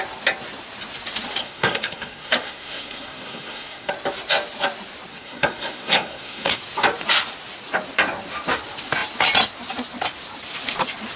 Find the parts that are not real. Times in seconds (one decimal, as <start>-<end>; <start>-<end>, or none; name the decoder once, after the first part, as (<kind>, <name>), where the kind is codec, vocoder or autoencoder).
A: 1.4-3.9 (codec, SNAC); 5.1-6.6